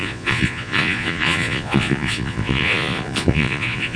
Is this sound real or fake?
fake